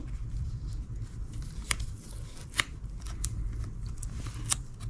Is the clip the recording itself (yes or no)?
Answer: no